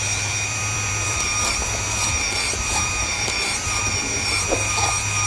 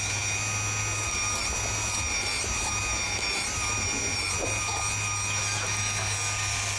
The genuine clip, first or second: second